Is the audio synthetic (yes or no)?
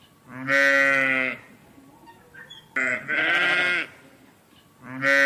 no